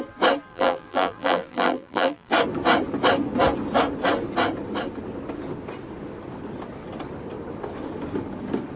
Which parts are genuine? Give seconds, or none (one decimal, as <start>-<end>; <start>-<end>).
0.0-0.5; 2.3-8.8